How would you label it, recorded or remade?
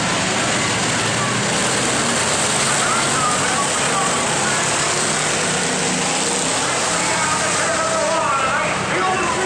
recorded